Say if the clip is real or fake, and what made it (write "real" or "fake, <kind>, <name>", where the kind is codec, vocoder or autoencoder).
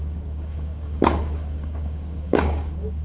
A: fake, codec, DAC